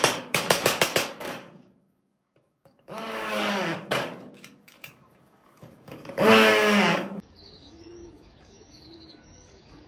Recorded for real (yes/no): no